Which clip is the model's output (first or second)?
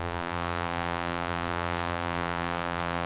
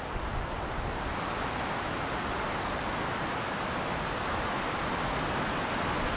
first